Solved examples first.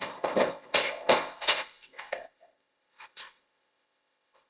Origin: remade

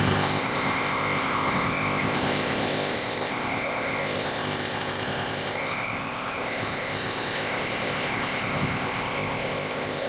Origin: remade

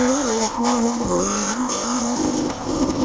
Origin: remade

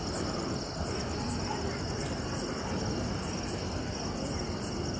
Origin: recorded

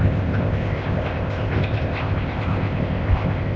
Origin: remade